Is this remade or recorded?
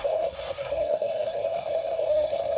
remade